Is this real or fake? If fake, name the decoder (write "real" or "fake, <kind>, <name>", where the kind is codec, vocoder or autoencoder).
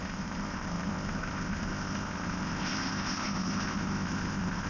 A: fake, codec, ZipCodec